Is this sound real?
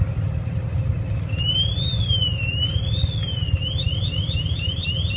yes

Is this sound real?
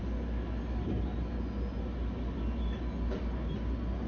yes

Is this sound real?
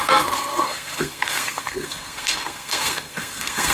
no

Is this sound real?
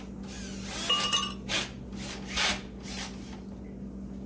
yes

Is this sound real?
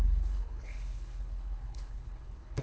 no